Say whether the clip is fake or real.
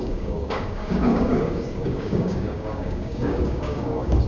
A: fake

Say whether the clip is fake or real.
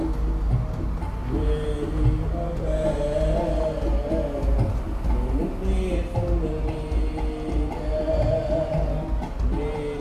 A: real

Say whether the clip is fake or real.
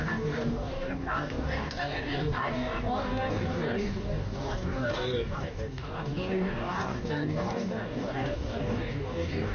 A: fake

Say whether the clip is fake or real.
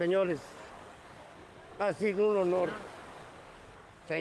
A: fake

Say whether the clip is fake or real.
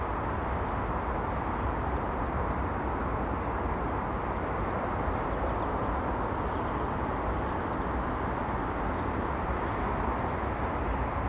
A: real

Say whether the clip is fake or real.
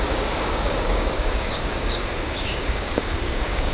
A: fake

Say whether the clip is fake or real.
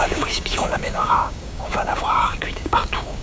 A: fake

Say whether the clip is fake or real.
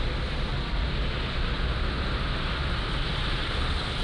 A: real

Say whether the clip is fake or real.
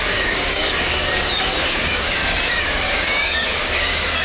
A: fake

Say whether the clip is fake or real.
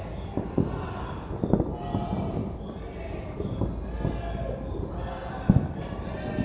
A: real